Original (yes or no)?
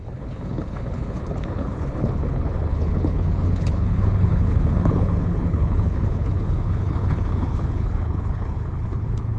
no